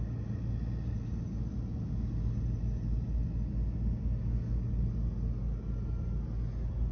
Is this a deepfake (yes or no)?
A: no